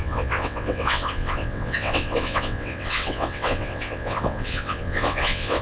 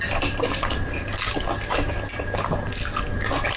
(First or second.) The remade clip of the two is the first